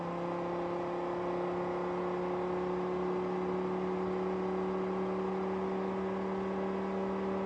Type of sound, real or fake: real